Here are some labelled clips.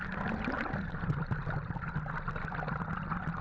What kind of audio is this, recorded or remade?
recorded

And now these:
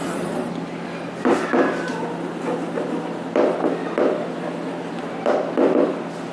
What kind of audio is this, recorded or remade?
recorded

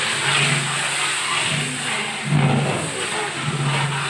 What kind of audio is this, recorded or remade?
recorded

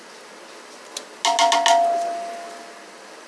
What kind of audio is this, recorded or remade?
recorded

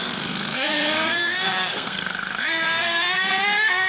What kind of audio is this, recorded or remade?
remade